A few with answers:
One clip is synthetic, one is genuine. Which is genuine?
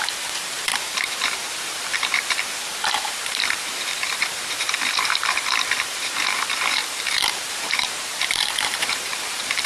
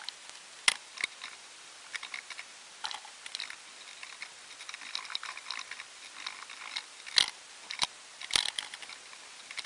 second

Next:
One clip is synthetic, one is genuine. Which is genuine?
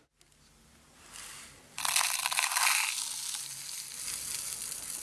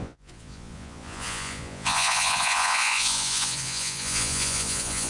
first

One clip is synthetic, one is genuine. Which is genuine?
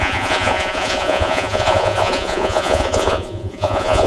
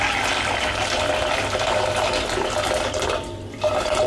second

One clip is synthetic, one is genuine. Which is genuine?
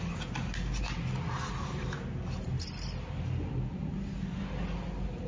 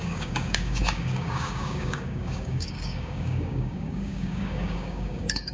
first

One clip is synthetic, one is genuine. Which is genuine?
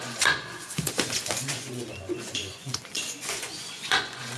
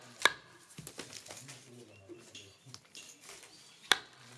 second